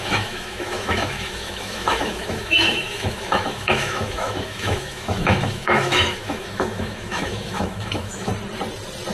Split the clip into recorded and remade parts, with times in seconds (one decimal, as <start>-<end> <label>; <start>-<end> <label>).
0.0-8.3 remade; 8.3-9.1 recorded